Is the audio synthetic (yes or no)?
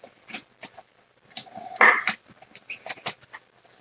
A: no